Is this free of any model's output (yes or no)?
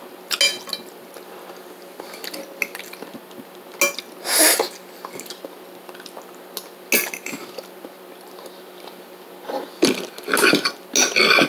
yes